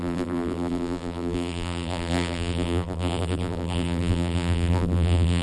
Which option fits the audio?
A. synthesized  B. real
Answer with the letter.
A